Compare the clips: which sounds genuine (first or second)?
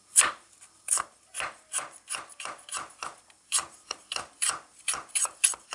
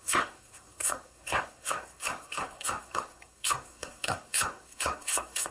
first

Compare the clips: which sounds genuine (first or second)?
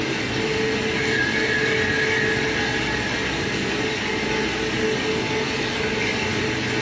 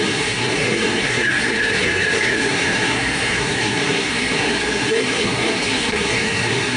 first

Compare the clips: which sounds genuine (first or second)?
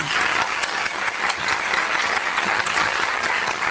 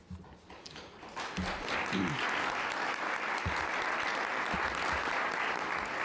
second